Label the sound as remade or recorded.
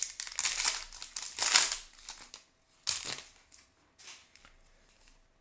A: recorded